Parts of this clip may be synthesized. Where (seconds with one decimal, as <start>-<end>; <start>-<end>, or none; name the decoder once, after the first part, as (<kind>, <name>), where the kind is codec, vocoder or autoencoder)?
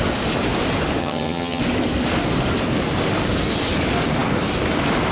1.0-1.6 (vocoder, HiFi-GAN)